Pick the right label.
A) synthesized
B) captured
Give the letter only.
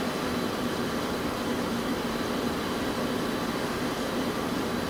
A